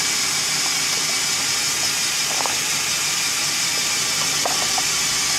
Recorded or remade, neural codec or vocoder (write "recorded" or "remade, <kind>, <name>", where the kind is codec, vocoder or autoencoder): recorded